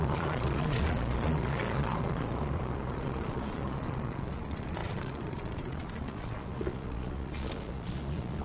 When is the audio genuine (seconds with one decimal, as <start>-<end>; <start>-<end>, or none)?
none